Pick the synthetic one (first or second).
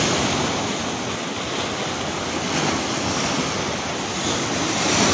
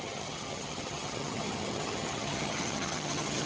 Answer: second